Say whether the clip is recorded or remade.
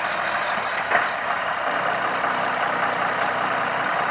remade